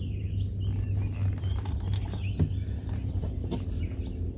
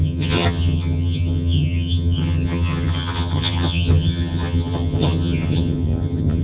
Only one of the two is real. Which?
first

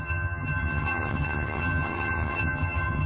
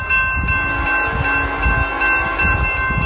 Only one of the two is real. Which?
second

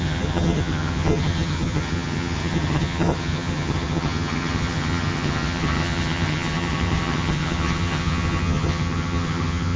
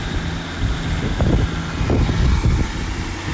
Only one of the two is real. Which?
second